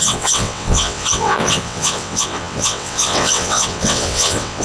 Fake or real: fake